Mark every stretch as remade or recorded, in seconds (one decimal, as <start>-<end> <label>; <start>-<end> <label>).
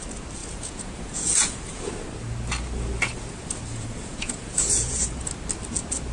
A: 0.0-0.4 recorded; 0.4-1.9 remade; 1.9-3.7 recorded; 3.7-5.3 remade; 5.3-6.1 recorded